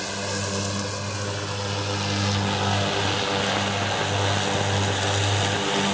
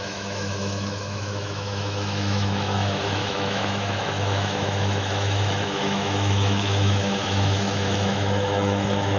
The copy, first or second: second